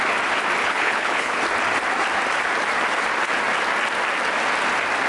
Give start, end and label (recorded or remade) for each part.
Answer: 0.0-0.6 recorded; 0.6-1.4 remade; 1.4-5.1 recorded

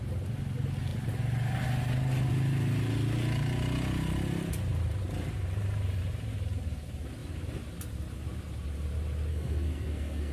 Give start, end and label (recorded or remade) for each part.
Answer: 0.0-9.3 recorded; 9.3-10.3 remade